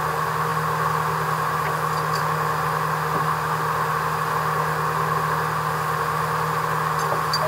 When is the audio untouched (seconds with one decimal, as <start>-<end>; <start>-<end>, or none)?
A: 0.0-7.5